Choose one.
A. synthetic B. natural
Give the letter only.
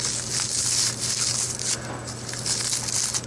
B